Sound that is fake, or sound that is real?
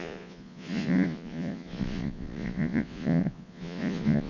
fake